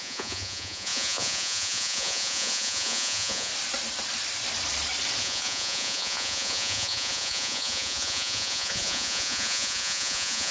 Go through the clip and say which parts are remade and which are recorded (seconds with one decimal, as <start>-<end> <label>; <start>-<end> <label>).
0.0-3.5 remade; 3.5-5.2 recorded; 5.2-10.5 remade